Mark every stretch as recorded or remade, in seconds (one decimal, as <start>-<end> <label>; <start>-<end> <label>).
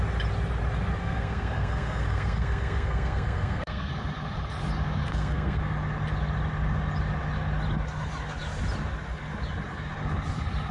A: 0.0-1.0 recorded; 1.0-3.9 remade; 3.9-5.0 recorded; 5.0-5.6 remade; 5.6-10.7 recorded